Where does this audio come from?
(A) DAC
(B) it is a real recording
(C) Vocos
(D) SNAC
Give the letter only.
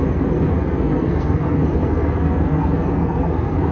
D